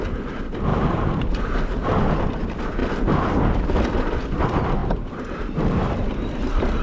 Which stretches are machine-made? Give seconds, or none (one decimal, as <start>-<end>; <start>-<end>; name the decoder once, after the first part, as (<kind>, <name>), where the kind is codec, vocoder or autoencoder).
0.7-1.7 (vocoder, BigVGAN v2); 4.8-6.8